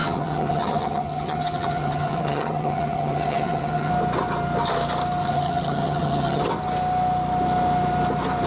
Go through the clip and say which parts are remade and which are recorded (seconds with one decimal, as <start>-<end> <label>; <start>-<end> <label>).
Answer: 0.0-3.9 remade; 3.9-5.2 recorded; 5.2-6.4 remade; 6.4-8.5 recorded